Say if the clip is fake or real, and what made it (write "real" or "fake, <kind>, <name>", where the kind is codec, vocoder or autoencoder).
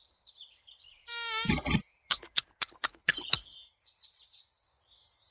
real